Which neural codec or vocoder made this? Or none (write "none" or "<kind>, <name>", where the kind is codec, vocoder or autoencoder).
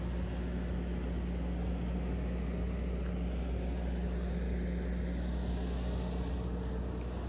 none